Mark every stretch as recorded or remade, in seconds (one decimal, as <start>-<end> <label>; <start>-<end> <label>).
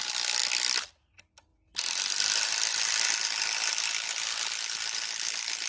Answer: 0.0-5.7 recorded